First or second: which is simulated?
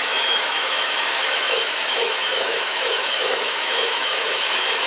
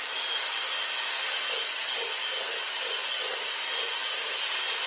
first